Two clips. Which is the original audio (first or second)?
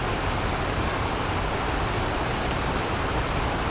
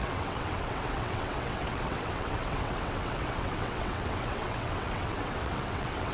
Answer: first